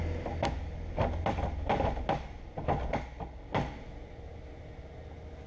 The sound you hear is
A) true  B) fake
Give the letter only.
A